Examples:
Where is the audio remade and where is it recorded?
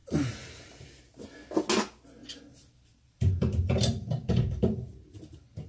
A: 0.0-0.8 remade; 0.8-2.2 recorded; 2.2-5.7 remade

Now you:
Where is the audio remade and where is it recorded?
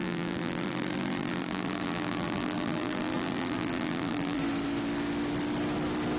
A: 0.0-4.4 remade; 4.4-6.2 recorded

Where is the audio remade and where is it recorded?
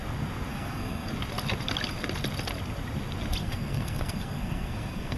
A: 0.0-0.5 recorded; 0.5-1.1 remade; 1.1-3.4 recorded; 3.4-5.2 remade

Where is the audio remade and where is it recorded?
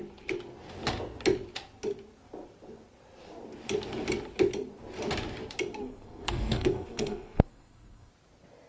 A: 0.0-5.8 recorded; 5.8-8.1 remade; 8.1-8.7 recorded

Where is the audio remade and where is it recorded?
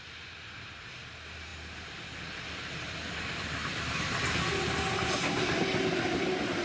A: 0.0-6.6 recorded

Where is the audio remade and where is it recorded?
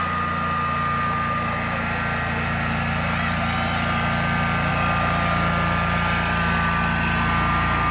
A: 0.0-7.9 recorded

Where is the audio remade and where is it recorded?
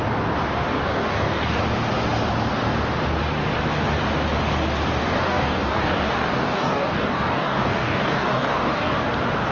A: 0.0-0.7 recorded; 0.7-1.6 remade; 1.6-4.9 recorded; 4.9-9.1 remade; 9.1-9.5 recorded